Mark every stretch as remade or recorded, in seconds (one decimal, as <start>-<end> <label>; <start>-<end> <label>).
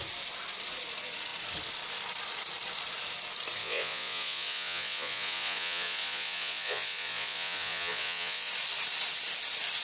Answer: 0.0-3.6 recorded; 3.6-8.5 remade; 8.5-9.8 recorded